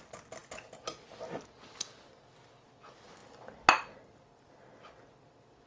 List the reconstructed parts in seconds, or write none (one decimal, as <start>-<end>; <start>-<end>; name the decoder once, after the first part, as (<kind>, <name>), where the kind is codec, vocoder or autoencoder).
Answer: none